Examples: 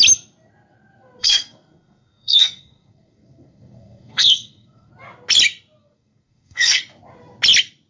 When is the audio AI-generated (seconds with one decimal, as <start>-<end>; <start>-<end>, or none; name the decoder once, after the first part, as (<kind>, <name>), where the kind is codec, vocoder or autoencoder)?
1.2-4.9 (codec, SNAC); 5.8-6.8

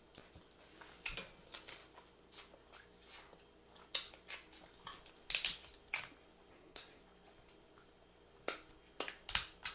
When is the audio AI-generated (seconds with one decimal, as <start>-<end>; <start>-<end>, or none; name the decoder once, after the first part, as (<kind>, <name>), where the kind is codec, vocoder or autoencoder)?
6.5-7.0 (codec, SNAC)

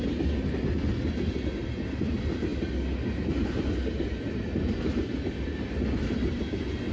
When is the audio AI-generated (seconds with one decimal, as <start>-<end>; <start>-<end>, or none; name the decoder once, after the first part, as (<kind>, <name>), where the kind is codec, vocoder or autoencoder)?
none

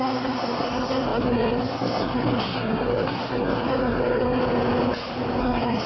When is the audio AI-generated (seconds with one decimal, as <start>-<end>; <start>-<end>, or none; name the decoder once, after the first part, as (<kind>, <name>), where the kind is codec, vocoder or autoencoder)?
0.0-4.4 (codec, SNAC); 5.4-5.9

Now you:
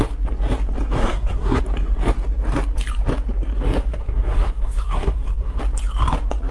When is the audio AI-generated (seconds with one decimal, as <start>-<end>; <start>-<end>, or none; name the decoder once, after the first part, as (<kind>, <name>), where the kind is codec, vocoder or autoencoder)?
1.0-1.6 (codec, SNAC); 3.9-5.6

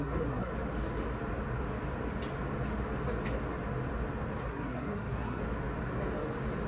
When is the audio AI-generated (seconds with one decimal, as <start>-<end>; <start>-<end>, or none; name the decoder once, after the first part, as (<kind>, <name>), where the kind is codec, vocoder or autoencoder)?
0.0-0.5 (codec, SNAC); 4.4-5.4

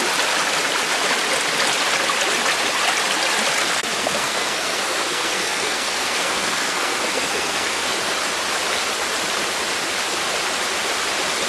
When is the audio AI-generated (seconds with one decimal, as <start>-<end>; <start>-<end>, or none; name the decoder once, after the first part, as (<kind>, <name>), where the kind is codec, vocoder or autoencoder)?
3.6-7.9 (codec, SNAC)

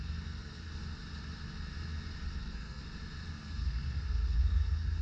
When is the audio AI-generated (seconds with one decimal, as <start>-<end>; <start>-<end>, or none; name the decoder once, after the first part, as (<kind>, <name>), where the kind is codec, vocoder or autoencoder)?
0.0-0.7 (codec, SNAC); 2.4-2.8; 3.3-5.0